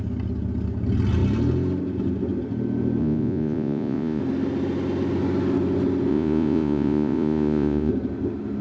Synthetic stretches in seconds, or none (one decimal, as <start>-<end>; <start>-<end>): 3.0-4.2; 6.1-7.9